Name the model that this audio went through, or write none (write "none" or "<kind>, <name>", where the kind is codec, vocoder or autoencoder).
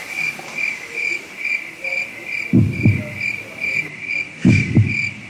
none